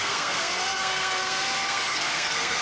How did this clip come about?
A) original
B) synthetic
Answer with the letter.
B